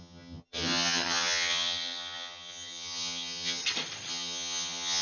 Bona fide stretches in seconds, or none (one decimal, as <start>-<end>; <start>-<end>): 3.6-4.1